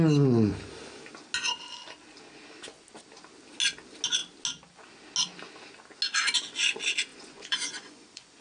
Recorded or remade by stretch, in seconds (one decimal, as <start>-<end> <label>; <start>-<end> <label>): 0.0-7.1 recorded; 7.1-8.4 remade